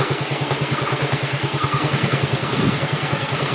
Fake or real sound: fake